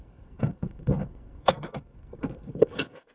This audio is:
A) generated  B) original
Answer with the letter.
A